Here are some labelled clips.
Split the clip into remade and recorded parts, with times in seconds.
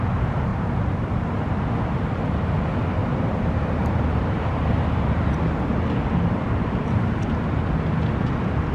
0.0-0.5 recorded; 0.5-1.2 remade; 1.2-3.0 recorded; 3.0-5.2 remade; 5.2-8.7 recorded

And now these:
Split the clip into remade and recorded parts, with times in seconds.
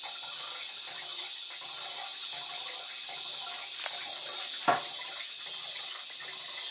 0.0-2.1 recorded; 2.1-5.0 remade; 5.0-6.7 recorded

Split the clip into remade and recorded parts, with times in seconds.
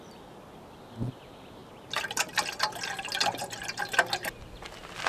0.0-5.1 recorded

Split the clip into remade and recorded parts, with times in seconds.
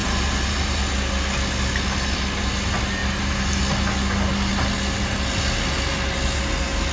0.0-0.8 remade; 0.8-3.0 recorded; 3.0-3.6 remade; 3.6-6.9 recorded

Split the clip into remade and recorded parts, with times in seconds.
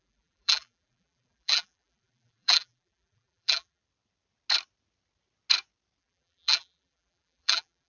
0.0-3.8 remade; 3.8-6.0 recorded; 6.0-7.9 remade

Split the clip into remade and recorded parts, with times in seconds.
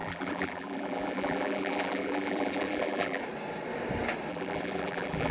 0.0-3.2 remade; 3.2-4.3 recorded; 4.3-5.3 remade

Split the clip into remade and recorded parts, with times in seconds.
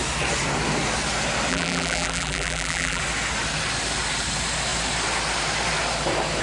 0.0-1.5 recorded; 1.5-3.0 remade; 3.0-6.4 recorded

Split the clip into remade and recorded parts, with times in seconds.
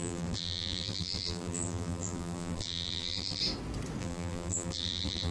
0.0-3.4 remade; 3.4-4.0 recorded; 4.0-5.3 remade